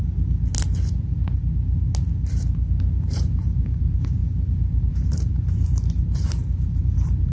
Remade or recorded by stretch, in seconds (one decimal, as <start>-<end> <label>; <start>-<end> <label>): 0.0-0.5 remade; 0.5-3.0 recorded; 3.0-4.2 remade; 4.2-4.8 recorded; 4.8-7.3 remade